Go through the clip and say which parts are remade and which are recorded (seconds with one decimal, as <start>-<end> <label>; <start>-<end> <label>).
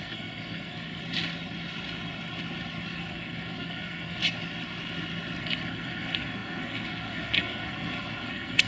0.0-1.0 remade; 1.0-3.0 recorded; 3.0-4.2 remade; 4.2-5.4 recorded; 5.4-8.7 remade